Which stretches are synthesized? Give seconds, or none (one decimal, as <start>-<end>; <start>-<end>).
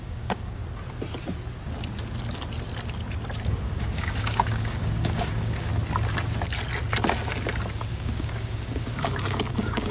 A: 0.0-0.6; 3.4-5.7; 7.9-9.9